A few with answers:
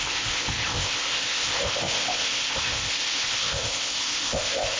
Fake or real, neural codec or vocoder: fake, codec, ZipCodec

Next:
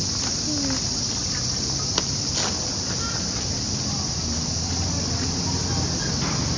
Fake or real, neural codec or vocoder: real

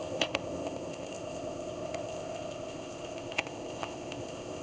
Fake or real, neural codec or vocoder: fake, codec, ZipCodec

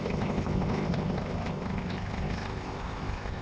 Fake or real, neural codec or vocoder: fake, codec, ZipCodec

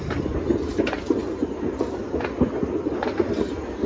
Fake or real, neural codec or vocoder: real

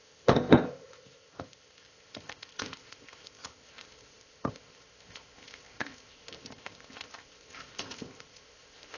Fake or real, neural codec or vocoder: fake, codec, ZipCodec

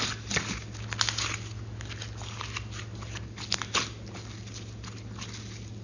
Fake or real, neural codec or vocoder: real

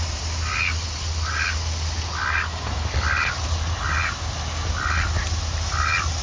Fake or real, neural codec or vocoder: real